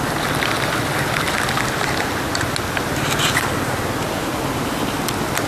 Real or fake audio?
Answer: real